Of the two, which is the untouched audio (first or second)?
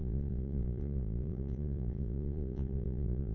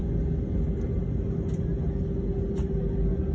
second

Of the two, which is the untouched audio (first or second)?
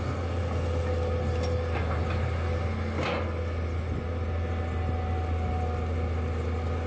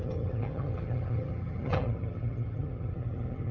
first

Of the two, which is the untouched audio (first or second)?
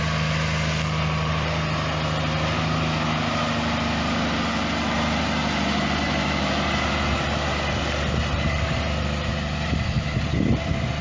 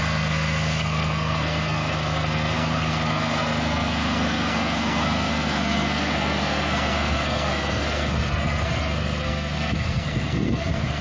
first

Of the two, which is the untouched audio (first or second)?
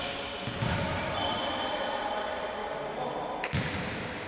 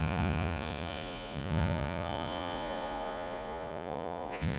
first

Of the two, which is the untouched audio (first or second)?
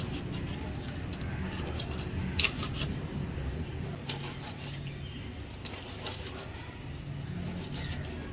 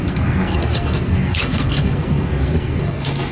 first